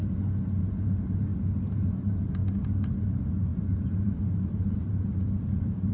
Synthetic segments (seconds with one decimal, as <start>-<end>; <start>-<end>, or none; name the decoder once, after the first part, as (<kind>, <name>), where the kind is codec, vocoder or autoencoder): 0.6-2.4 (vocoder, BigVGAN v2); 3.0-5.9